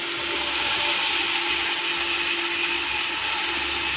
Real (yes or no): yes